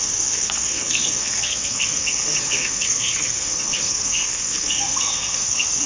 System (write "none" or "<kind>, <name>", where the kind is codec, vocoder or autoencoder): codec, SNAC